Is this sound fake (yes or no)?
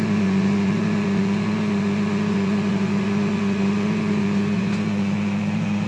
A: yes